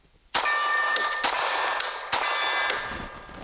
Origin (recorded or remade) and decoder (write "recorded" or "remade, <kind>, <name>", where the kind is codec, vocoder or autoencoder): recorded